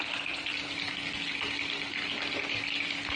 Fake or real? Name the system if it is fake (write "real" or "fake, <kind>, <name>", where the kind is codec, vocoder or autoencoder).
real